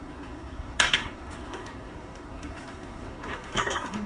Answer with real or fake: fake